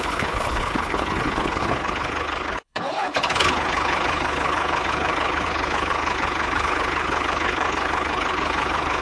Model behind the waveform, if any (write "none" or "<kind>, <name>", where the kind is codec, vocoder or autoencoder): codec, HILCodec